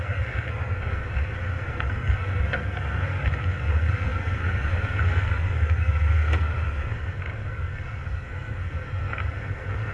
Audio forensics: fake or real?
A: fake